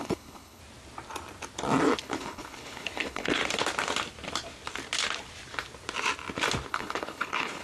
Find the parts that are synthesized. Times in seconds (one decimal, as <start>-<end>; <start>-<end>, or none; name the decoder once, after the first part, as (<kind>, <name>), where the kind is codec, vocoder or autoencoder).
0.0-0.6 (codec, HILCodec); 2.0-3.4; 6.7-7.6